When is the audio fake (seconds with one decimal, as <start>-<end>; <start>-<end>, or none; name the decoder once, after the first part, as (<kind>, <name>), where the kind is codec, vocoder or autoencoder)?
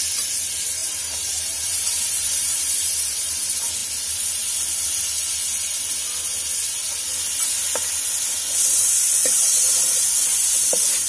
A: 0.8-3.3 (vocoder, BigVGAN v2); 9.2-9.8